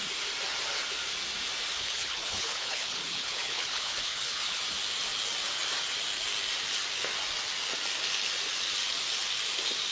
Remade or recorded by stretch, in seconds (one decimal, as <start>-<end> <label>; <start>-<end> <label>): 0.0-1.7 recorded; 1.7-4.6 remade; 4.6-9.9 recorded